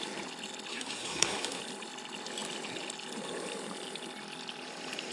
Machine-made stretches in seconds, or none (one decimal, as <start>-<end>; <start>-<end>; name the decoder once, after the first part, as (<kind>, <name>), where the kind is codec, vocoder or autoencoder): 0.7-1.6 (codec, SNAC)